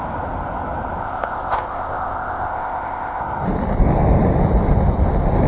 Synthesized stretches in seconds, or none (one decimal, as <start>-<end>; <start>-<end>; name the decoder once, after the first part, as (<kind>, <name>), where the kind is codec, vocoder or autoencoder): 1.0-3.2 (codec, ZipCodec)